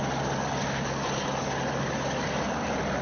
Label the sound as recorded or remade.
recorded